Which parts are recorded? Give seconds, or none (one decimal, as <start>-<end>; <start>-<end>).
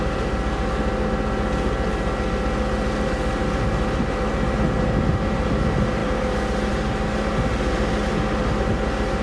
0.0-9.2